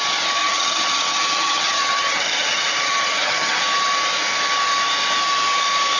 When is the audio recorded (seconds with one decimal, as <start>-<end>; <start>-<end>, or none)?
0.0-0.4; 3.6-6.0